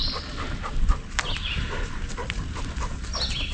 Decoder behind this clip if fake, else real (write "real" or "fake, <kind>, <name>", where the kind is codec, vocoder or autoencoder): real